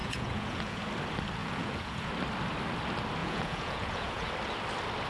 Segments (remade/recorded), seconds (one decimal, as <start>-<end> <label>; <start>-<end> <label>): 0.0-0.8 remade; 0.8-1.4 recorded; 1.4-2.1 remade; 2.1-3.2 recorded; 3.2-4.3 remade; 4.3-5.1 recorded